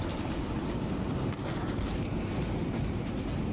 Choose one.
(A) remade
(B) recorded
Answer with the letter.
B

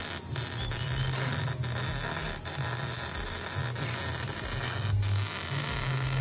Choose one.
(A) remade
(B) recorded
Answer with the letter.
B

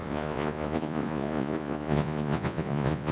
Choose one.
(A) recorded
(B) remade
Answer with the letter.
B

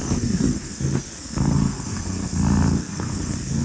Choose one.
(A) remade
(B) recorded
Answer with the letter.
A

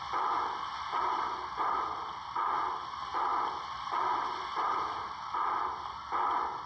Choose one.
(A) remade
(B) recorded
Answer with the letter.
A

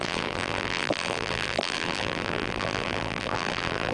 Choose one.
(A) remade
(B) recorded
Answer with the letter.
A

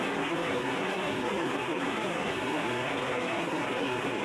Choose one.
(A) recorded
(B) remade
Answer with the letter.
B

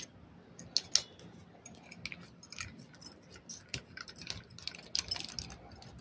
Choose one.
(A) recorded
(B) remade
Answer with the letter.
A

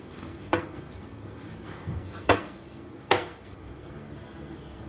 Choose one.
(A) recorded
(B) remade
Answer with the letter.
B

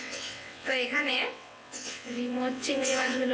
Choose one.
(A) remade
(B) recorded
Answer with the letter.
A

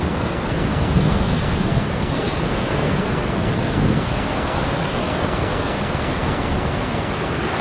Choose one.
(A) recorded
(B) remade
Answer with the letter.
B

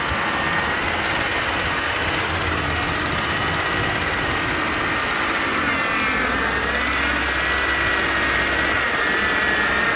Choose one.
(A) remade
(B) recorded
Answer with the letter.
B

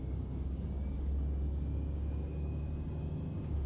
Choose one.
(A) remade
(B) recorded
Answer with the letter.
A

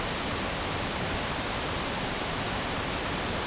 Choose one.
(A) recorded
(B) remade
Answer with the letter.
A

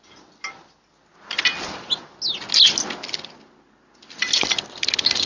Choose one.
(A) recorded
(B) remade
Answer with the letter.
A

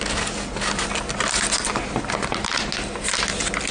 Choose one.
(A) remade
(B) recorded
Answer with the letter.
B